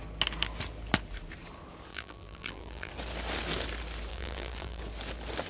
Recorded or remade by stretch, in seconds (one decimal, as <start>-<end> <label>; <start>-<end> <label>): 0.0-1.9 recorded; 1.9-2.9 remade; 2.9-4.1 recorded; 4.1-4.8 remade; 4.8-5.5 recorded